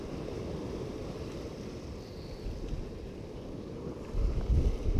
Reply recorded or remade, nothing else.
recorded